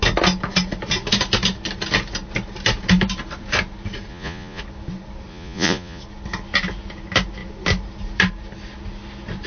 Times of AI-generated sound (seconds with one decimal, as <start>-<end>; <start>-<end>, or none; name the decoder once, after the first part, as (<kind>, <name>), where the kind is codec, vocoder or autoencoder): 4.1-4.6 (vocoder, Vocos); 5.3-6.0